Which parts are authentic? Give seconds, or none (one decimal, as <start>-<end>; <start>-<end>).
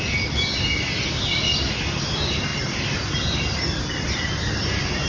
0.0-5.1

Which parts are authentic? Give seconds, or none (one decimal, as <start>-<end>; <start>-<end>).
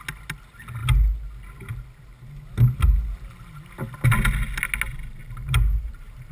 0.0-5.2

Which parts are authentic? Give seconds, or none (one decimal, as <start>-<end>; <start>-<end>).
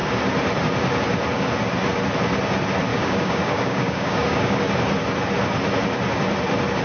0.0-2.9; 4.6-6.8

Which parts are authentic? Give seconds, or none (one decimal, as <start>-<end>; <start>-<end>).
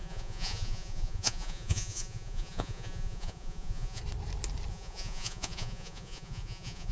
4.0-4.7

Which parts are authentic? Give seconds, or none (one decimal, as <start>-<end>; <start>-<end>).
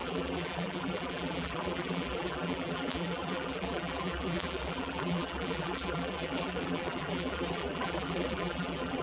none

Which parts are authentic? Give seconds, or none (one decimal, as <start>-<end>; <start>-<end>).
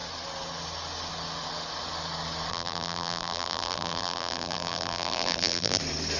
0.0-2.5; 5.8-6.2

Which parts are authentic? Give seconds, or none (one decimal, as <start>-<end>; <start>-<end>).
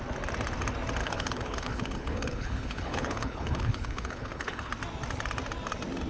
0.0-1.0; 4.7-6.1